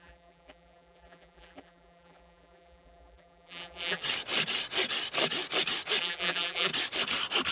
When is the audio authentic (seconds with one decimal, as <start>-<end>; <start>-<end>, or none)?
4.0-6.0; 6.7-7.5